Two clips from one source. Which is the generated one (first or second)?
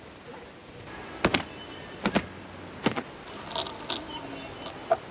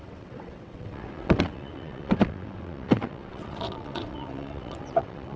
second